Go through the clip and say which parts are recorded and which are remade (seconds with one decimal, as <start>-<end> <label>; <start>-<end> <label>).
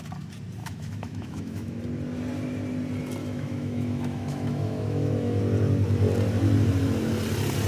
0.0-0.6 recorded; 0.6-1.8 remade; 1.8-3.2 recorded; 3.2-5.4 remade; 5.4-7.7 recorded